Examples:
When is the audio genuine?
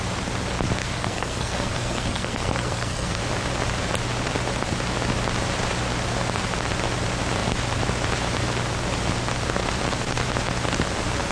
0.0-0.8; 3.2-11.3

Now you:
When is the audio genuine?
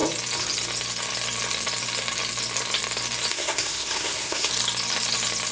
0.0-3.3; 4.5-5.5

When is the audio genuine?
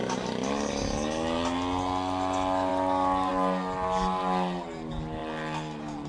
0.0-6.1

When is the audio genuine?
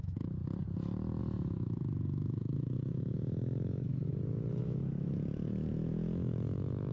0.4-1.2; 4.1-4.6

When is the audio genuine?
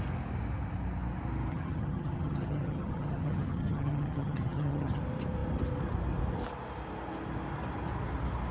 0.0-1.5; 5.0-8.5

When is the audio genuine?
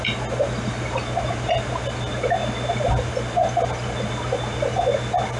0.0-5.4